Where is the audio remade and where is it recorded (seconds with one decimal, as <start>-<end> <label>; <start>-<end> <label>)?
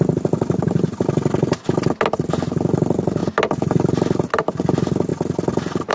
0.0-5.9 recorded